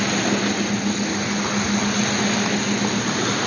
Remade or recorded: recorded